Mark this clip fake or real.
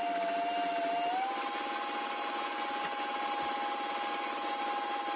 real